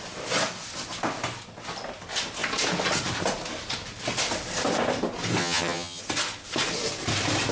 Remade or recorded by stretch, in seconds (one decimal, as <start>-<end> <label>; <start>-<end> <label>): 0.0-5.4 recorded; 5.4-6.0 remade; 6.0-7.5 recorded